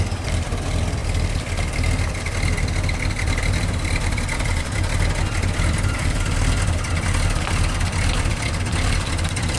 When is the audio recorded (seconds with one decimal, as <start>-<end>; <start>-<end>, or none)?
none